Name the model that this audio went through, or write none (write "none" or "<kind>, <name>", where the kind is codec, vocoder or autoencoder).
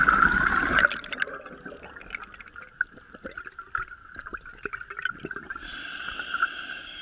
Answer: none